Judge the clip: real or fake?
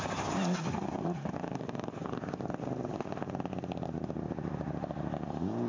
real